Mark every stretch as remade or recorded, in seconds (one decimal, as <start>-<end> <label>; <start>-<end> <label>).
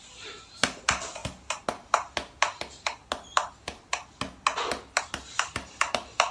0.0-1.2 remade; 1.2-5.0 recorded; 5.0-6.3 remade